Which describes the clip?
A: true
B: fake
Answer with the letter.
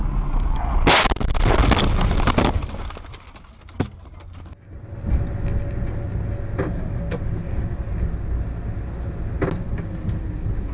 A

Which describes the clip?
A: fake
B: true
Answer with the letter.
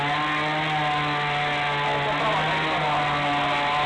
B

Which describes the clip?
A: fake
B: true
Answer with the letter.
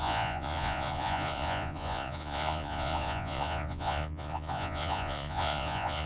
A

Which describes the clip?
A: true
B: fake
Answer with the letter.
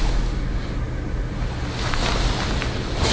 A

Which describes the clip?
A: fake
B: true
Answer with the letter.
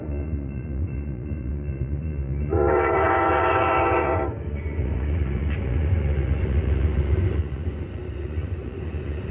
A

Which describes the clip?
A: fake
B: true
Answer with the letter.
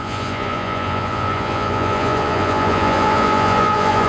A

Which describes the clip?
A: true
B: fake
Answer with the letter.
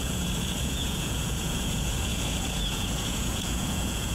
B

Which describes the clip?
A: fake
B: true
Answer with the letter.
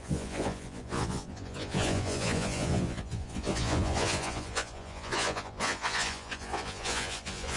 A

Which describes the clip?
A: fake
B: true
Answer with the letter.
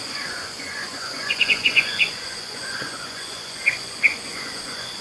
A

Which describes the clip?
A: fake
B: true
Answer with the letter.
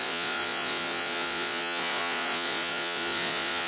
A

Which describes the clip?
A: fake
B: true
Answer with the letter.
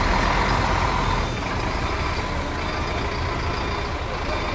B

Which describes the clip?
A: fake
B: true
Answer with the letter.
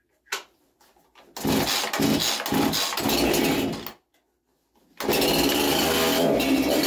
B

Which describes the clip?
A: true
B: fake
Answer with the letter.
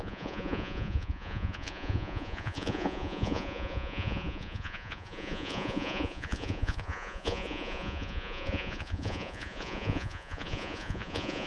B